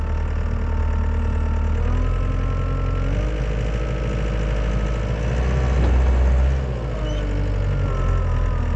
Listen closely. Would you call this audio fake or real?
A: real